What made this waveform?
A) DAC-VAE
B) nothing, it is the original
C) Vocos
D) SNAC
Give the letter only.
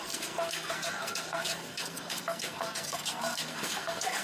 D